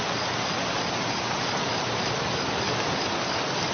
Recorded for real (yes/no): yes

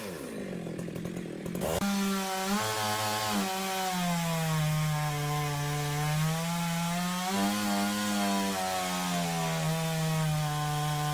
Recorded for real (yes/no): yes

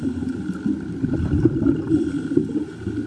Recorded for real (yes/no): yes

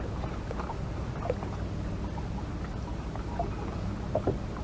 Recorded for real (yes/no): yes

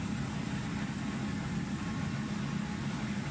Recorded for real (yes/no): yes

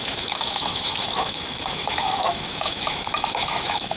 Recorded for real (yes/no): no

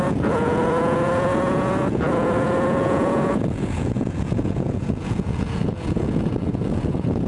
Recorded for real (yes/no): no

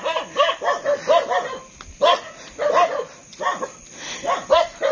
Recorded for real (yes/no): yes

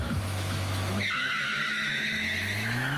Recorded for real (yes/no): no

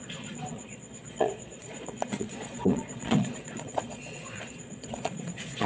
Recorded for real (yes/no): no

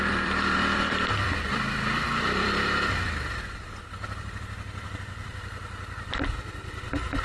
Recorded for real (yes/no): no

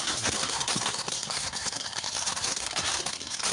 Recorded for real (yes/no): no